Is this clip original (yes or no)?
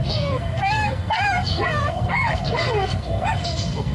no